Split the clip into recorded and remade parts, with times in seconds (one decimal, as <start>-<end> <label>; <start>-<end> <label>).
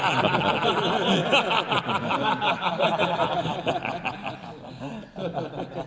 0.0-5.9 recorded